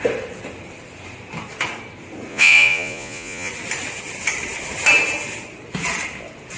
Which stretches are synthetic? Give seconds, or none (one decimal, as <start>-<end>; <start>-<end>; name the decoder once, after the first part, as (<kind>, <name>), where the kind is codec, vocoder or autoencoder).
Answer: 2.3-3.5 (vocoder, Vocos)